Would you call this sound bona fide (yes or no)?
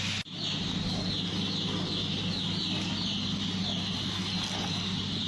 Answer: yes